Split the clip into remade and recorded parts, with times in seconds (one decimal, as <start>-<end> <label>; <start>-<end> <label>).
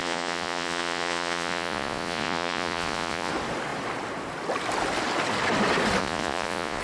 0.0-3.3 remade; 3.3-6.0 recorded; 6.0-6.8 remade